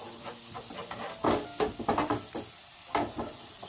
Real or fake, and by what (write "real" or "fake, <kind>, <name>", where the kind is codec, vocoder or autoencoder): real